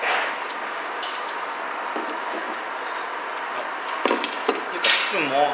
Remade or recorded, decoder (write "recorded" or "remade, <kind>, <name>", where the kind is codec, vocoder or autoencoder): recorded